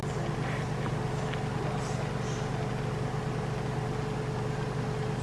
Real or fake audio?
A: real